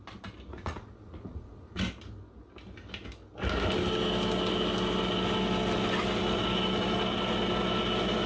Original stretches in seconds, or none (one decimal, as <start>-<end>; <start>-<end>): 0.0-0.5; 1.8-8.3